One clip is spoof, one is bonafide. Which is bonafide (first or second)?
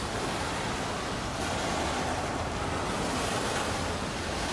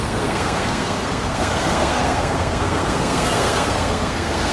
first